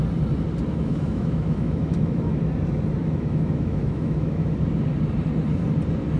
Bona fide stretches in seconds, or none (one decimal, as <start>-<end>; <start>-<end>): 0.0-0.7; 2.4-3.0; 4.5-6.2